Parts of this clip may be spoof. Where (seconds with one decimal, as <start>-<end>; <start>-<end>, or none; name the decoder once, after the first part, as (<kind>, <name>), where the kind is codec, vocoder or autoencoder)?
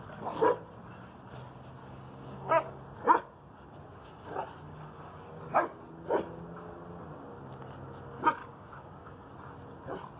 1.8-2.8 (codec, DAC); 4.0-5.4; 8.4-9.3